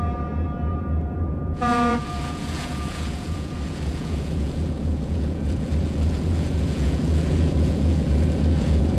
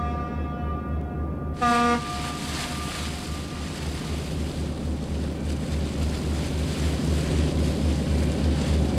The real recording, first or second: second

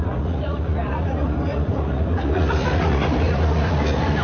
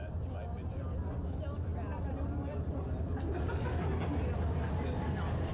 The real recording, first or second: second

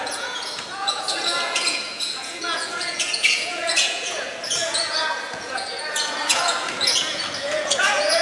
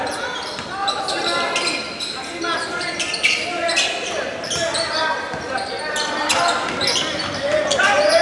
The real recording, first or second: second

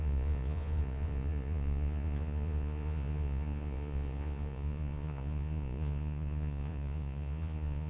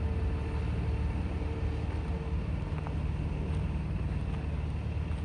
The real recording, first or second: second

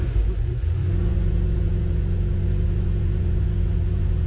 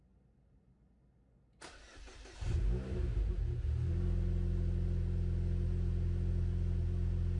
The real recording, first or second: second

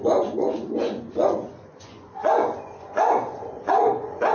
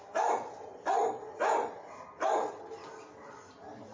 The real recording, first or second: second